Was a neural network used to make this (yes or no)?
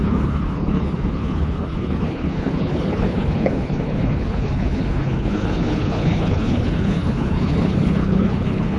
yes